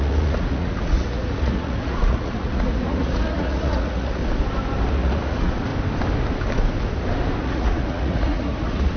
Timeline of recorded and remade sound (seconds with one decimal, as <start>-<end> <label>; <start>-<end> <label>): 0.0-4.2 remade; 4.2-4.9 recorded; 4.9-5.7 remade; 5.7-7.4 recorded; 7.4-9.0 remade